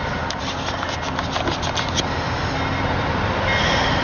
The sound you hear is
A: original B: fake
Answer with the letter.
A